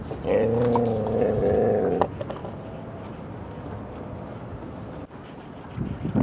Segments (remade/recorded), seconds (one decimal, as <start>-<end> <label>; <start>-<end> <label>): 0.0-6.2 recorded